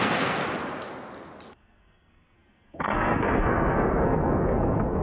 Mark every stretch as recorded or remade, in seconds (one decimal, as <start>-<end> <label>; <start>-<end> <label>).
0.0-0.4 remade; 0.4-1.5 recorded; 1.5-5.0 remade